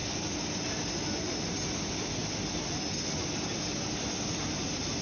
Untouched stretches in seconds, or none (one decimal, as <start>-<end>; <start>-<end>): 0.0-5.0